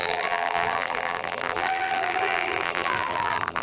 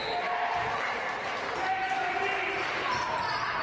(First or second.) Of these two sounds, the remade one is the first